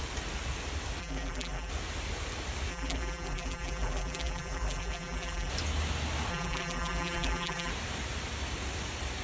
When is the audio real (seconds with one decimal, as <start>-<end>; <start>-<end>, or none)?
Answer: 0.0-1.0; 1.7-2.7; 5.5-6.3; 7.7-9.2